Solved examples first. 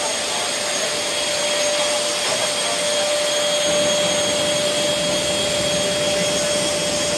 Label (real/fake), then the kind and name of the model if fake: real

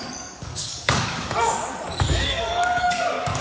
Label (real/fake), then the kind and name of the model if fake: fake, codec, DAC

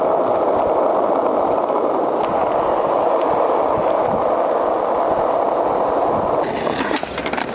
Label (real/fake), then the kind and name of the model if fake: real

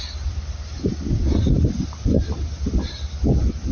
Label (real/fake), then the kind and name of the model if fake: real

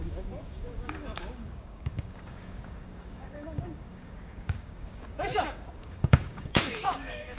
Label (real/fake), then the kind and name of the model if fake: fake, codec, DAC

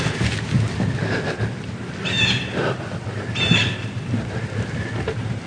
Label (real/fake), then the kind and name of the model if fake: real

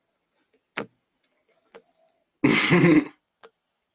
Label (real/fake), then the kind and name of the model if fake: real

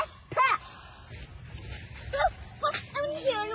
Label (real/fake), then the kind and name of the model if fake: real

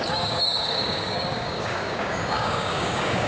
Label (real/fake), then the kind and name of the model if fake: fake, codec, DAC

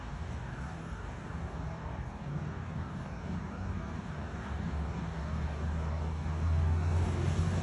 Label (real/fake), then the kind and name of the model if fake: fake, codec, DAC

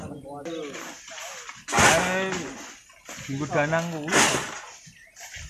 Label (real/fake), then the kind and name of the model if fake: real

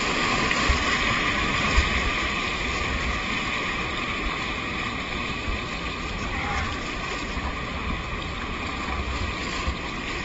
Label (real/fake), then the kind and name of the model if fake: real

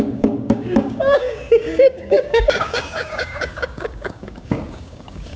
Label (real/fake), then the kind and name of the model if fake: fake, codec, DAC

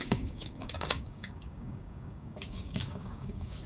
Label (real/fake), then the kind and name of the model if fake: fake, codec, DAC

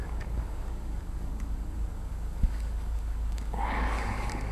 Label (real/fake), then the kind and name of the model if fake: fake, codec, DAC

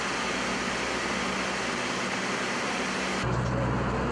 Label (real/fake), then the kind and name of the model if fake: real